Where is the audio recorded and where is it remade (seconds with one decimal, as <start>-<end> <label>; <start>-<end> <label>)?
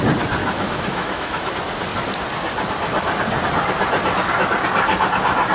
0.0-0.4 recorded; 0.4-1.5 remade; 1.5-5.5 recorded